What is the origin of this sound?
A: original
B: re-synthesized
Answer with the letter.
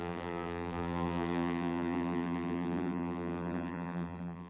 B